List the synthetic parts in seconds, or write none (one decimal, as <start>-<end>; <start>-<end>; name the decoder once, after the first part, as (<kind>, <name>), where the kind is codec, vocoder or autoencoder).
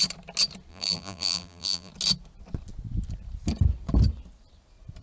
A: 0.7-1.9 (vocoder, BigVGAN v2)